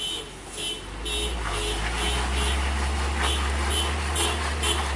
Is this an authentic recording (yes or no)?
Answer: yes